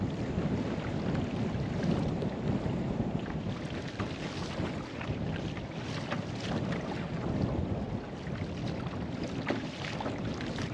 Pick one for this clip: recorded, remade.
recorded